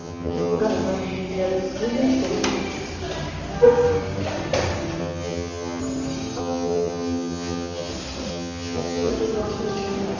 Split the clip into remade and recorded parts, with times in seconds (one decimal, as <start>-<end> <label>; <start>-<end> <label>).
0.0-0.6 remade; 0.6-5.0 recorded; 5.0-5.8 remade; 5.8-6.4 recorded; 6.4-7.9 remade; 7.9-8.3 recorded; 8.3-9.1 remade; 9.1-10.2 recorded